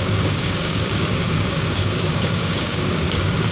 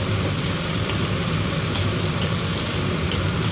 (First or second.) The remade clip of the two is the first